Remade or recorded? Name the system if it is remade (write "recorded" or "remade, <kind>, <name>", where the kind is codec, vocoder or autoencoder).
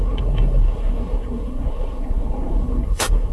remade, codec, SNAC